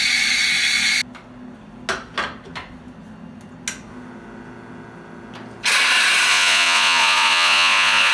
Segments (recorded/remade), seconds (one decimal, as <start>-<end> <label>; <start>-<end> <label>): 0.0-6.3 recorded; 6.3-8.1 remade

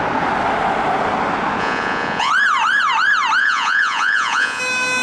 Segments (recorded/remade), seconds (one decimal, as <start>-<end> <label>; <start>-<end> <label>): 0.0-1.6 recorded; 1.6-2.3 remade; 2.3-3.4 recorded; 3.4-4.6 remade; 4.6-5.0 recorded

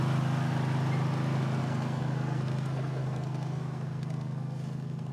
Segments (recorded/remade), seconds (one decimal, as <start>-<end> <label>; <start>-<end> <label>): 0.0-1.6 recorded; 1.6-5.1 remade

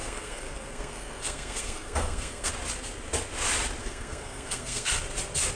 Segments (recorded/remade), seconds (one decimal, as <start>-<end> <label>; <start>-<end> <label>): 0.0-2.5 remade; 2.5-3.8 recorded; 3.8-4.9 remade; 4.9-5.6 recorded